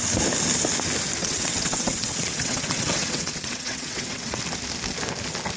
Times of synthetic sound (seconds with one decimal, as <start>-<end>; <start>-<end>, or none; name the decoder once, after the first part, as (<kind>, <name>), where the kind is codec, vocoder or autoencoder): 1.2-4.4 (vocoder, WaveNeXt)